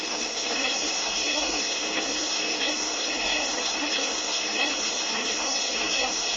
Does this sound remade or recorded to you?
remade